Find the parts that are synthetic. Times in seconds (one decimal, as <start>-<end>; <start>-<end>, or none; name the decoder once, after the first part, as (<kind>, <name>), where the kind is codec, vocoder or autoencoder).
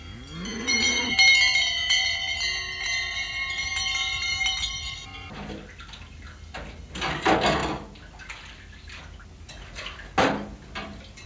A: 0.5-1.1 (vocoder, Vocos)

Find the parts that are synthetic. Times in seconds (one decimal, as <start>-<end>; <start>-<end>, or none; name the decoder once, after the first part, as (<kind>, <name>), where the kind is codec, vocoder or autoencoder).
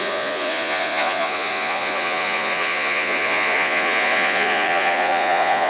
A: 0.0-5.7 (vocoder, Vocos)